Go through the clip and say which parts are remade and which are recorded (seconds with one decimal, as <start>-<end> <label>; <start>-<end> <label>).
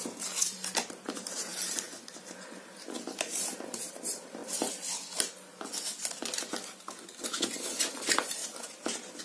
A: 0.0-9.2 recorded